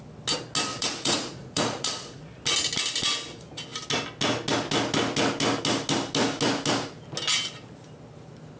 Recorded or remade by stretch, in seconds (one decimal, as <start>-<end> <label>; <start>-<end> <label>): 0.0-0.7 recorded; 0.7-2.3 remade; 2.3-8.6 recorded